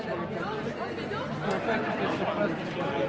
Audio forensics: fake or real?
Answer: real